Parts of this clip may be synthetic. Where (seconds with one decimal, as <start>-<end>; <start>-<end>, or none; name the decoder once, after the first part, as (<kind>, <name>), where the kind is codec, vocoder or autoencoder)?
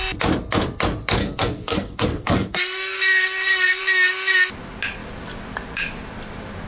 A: 1.2-3.8 (codec, SNAC)